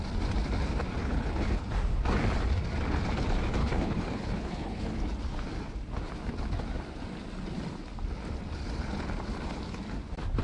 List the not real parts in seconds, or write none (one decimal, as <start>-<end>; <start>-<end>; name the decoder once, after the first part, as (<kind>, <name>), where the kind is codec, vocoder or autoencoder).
1.0-1.7 (codec, HILCodec); 3.6-4.9